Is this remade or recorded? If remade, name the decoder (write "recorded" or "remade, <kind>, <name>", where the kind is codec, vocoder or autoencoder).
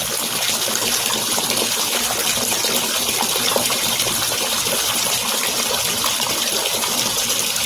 recorded